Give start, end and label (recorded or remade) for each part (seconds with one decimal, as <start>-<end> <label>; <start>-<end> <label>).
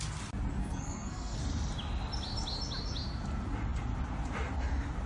0.0-0.6 recorded; 0.6-1.4 remade; 1.4-5.1 recorded